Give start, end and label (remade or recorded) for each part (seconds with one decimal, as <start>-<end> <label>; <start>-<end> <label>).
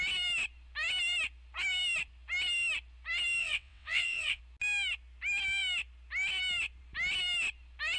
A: 0.0-3.4 recorded; 3.4-4.4 remade; 4.4-8.0 recorded